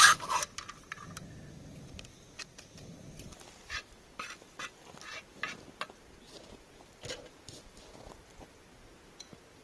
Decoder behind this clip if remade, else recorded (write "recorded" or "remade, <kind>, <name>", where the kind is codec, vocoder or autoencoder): recorded